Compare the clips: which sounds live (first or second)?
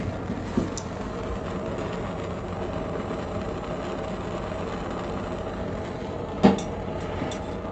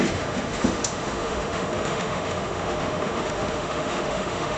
first